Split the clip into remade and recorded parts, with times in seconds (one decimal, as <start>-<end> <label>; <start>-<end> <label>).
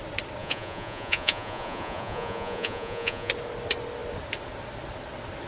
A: 0.0-0.4 recorded; 0.4-3.3 remade; 3.3-5.5 recorded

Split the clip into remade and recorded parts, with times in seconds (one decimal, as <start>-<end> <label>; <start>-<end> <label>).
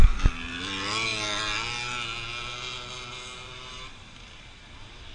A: 0.0-5.1 recorded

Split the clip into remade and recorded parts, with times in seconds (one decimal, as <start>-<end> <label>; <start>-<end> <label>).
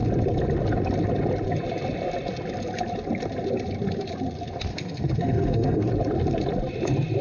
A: 0.0-4.7 recorded; 4.7-5.9 remade; 5.9-7.2 recorded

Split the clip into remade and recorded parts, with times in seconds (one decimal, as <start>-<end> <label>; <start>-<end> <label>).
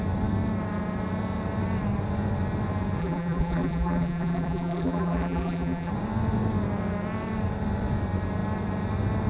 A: 0.0-3.0 recorded; 3.0-5.9 remade; 5.9-9.3 recorded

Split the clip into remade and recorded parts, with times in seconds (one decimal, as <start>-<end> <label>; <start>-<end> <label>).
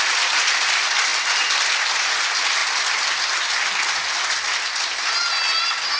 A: 0.0-6.0 recorded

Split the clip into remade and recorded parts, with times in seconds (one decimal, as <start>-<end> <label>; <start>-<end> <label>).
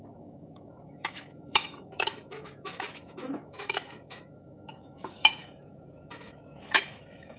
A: 0.0-7.4 remade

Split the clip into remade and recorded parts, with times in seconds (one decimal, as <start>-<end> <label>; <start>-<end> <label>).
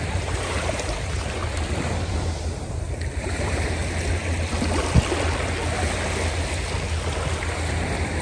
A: 0.0-1.4 remade; 1.4-3.3 recorded; 3.3-3.8 remade; 3.8-8.2 recorded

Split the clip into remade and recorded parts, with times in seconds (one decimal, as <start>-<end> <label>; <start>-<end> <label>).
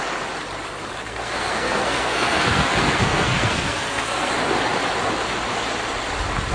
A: 0.0-1.0 recorded; 1.0-4.3 remade; 4.3-6.5 recorded